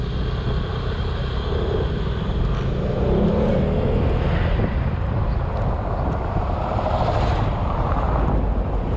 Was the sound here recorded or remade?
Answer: recorded